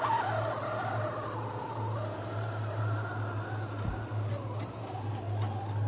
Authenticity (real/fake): real